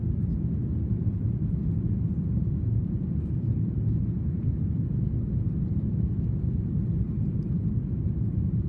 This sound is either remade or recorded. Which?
recorded